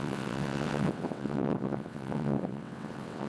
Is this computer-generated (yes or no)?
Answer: yes